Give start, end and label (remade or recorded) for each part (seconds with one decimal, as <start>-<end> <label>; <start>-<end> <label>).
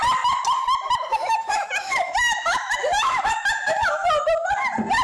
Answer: 0.0-1.1 recorded; 1.1-4.1 remade; 4.1-5.0 recorded